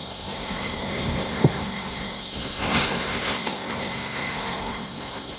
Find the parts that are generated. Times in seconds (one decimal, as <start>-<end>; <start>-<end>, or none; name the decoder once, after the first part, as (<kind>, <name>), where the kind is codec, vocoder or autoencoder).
0.0-5.4 (codec, SNAC)